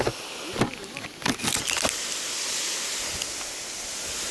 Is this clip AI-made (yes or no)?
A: no